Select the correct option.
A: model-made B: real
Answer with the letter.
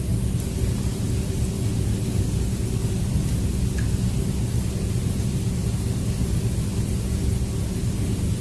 B